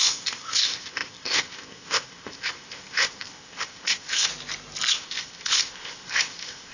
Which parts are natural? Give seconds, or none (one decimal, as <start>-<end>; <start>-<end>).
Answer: 4.3-4.9